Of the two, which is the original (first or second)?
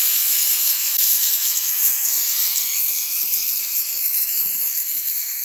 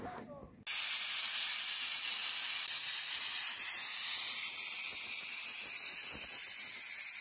second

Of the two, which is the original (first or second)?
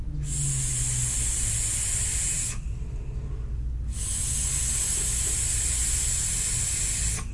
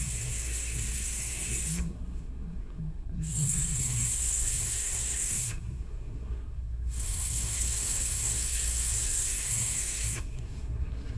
first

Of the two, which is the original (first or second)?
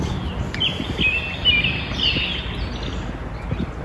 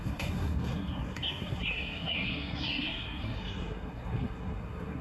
first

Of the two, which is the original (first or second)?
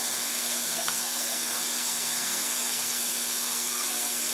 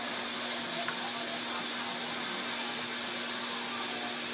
second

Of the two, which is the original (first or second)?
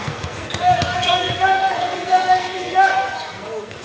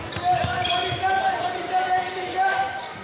second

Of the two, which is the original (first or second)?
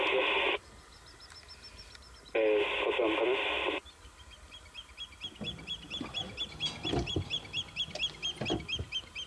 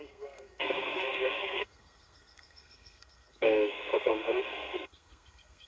first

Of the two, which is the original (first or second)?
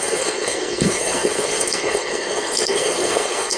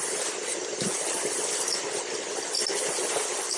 second